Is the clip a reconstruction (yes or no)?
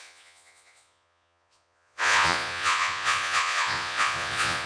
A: yes